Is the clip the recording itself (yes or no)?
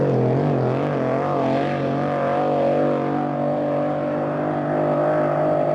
yes